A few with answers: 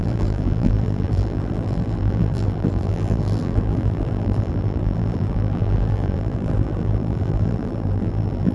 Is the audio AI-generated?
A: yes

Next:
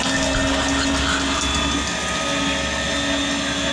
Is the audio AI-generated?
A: no